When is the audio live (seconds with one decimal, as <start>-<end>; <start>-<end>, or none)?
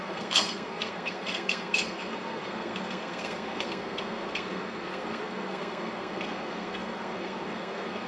none